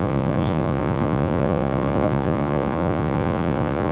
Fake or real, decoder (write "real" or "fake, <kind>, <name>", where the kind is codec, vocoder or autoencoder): fake, vocoder, Vocos